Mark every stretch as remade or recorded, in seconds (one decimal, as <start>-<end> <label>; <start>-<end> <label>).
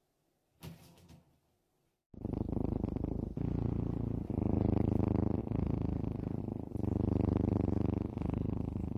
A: 0.0-5.4 recorded; 5.4-6.4 remade; 6.4-9.0 recorded